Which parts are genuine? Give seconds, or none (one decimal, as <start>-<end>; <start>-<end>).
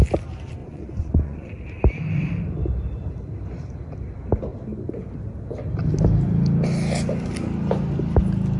0.0-0.6; 1.5-8.6